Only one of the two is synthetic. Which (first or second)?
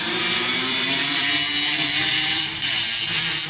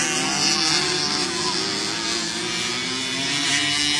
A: first